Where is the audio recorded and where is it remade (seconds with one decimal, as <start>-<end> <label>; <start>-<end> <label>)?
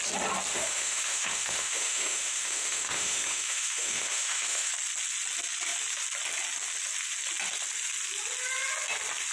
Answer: 0.0-0.5 recorded; 0.5-4.7 remade; 4.7-9.3 recorded